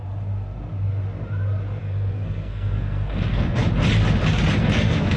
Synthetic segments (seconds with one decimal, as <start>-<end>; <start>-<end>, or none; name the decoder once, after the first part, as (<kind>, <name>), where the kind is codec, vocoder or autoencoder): 1.8-3.6 (codec, SNAC); 4.6-5.2